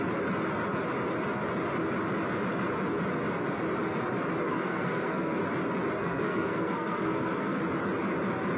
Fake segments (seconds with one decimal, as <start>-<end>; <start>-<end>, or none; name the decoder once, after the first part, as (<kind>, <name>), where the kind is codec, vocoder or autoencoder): 4.4-5.4 (codec, SNAC); 6.0-7.6